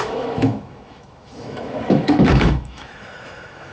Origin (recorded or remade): remade